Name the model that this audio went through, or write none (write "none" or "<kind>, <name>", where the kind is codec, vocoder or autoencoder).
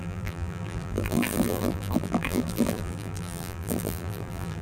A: vocoder, BigVGAN v2